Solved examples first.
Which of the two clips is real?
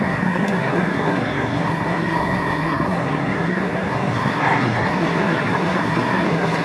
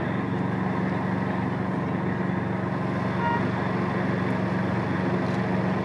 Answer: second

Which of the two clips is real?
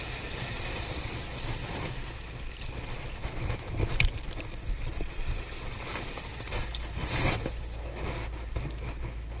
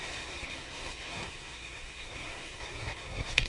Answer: first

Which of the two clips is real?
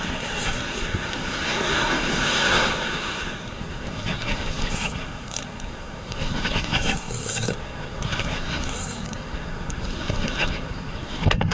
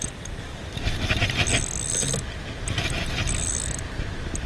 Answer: second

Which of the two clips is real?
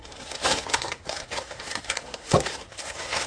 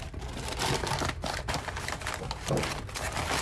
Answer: second